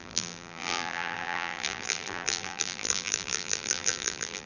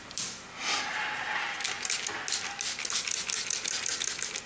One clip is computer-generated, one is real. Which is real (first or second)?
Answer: second